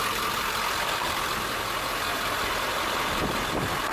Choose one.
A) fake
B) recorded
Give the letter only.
A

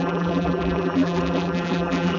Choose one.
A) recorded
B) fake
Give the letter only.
B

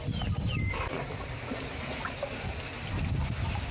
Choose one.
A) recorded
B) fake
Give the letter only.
A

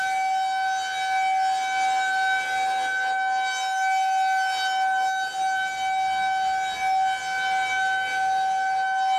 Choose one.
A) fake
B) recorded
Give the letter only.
B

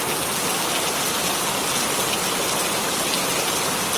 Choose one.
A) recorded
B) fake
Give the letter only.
A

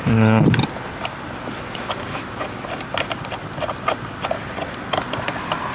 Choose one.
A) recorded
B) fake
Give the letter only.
B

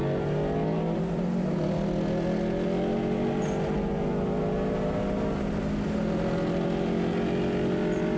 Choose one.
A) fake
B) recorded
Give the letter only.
B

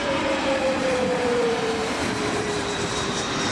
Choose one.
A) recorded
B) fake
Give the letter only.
B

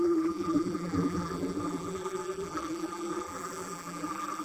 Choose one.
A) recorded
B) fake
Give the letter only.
B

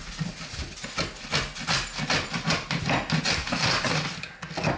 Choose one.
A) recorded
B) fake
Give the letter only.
A